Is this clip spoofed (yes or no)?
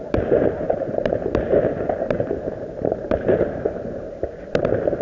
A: yes